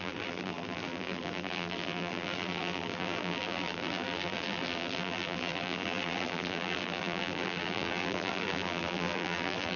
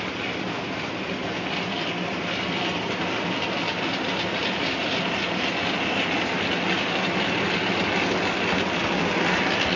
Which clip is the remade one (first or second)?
first